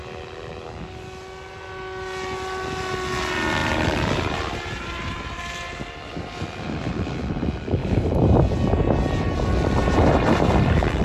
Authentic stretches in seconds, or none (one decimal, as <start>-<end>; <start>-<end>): 0.0-3.6; 5.4-7.8; 8.4-9.8